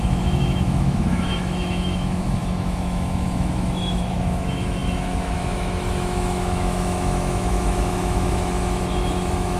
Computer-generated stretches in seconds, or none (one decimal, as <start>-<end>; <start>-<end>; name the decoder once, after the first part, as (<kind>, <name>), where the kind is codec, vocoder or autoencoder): 0.0-9.6 (autoencoder, DAC-VAE)